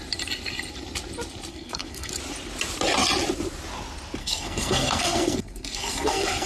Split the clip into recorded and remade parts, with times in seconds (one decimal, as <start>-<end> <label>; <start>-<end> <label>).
0.0-1.5 recorded; 1.5-2.1 remade; 2.1-4.2 recorded; 4.2-6.5 remade